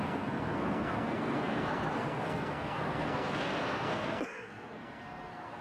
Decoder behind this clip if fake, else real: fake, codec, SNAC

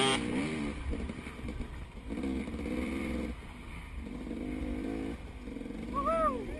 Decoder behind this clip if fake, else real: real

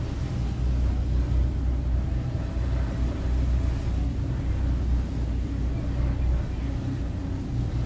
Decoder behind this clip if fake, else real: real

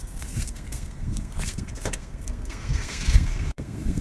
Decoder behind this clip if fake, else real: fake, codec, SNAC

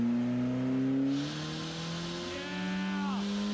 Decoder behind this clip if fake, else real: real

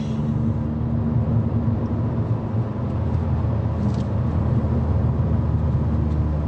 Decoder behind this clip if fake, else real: real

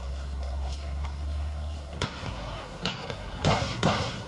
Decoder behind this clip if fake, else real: fake, codec, SNAC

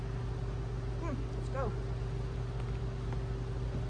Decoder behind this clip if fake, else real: real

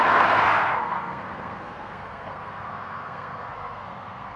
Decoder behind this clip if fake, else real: fake, codec, SNAC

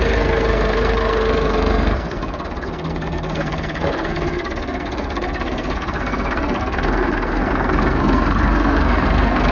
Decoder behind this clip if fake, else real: fake, codec, SNAC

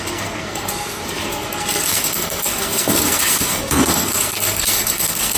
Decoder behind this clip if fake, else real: fake, codec, SNAC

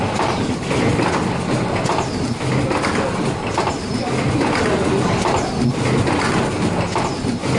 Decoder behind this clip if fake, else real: real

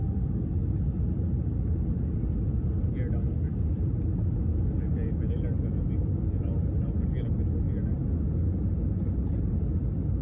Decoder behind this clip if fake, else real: real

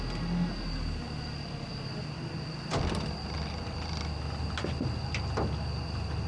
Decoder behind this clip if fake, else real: real